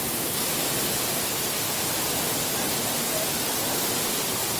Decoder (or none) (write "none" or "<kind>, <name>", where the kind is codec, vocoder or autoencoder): none